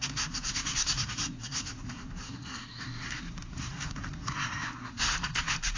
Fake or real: fake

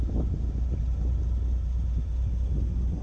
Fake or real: real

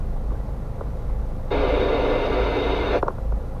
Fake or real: real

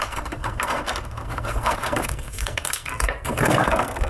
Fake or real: fake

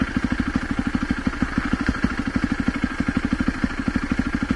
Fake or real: real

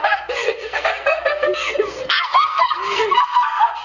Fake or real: fake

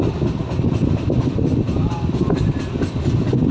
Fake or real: real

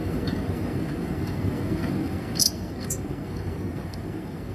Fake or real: fake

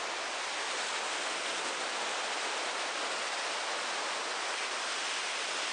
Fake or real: real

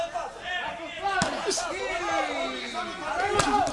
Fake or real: real